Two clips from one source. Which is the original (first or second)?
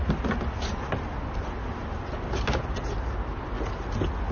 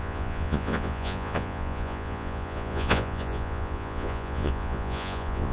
first